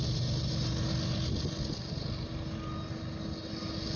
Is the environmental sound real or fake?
real